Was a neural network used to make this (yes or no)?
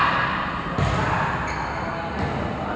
no